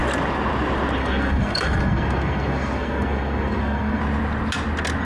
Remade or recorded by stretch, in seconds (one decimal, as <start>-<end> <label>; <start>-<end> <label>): 0.0-1.0 recorded; 1.0-4.0 remade; 4.0-5.0 recorded